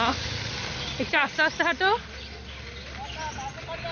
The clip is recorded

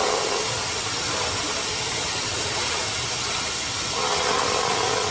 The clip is recorded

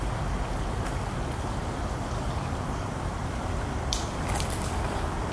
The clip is remade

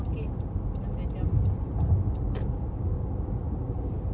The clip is recorded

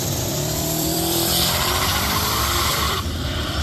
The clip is remade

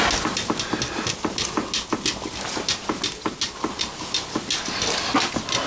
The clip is recorded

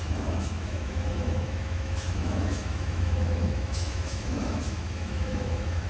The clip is remade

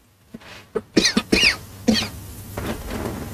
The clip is recorded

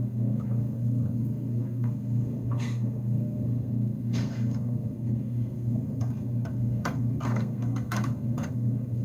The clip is remade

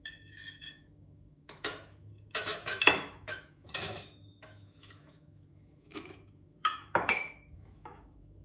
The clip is remade